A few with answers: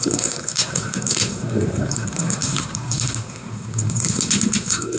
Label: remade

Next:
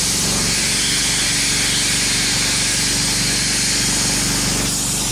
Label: recorded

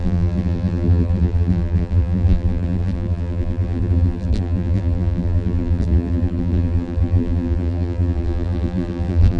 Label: remade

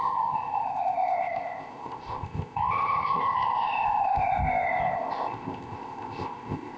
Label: remade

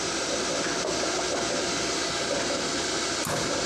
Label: recorded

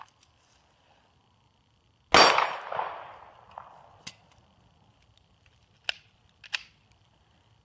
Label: recorded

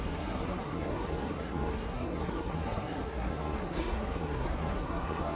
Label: remade